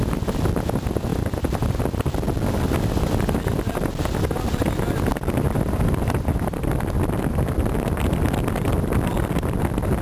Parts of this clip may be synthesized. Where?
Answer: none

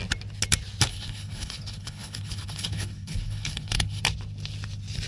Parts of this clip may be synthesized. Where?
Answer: 0.9-4.0 (codec, HILCodec)

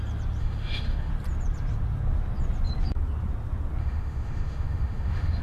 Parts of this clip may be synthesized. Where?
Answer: 0.4-1.1 (autoencoder, DAC-VAE); 3.8-5.4

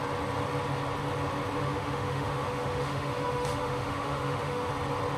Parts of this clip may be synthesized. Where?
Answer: 1.6-4.7 (autoencoder, DAC-VAE)

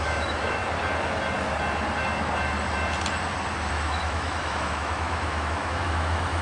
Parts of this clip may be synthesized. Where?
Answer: 0.0-0.6 (autoencoder, DAC-VAE); 3.7-6.4

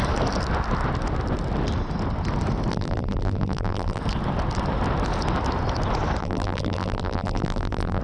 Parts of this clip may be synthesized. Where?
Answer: 2.7-4.0 (vocoder, BigVGAN v2); 6.2-8.0

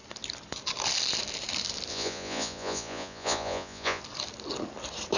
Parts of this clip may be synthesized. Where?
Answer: 1.9-4.0 (vocoder, Vocos)